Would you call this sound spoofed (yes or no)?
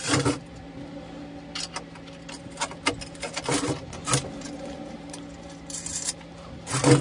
no